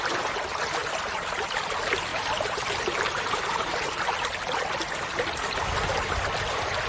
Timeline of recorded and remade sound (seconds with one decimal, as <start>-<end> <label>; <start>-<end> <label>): 0.0-2.1 recorded; 2.1-4.1 remade; 4.1-6.9 recorded